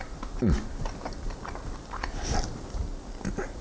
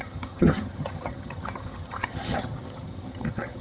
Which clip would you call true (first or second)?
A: first